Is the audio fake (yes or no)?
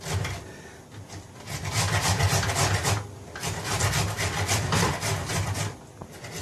no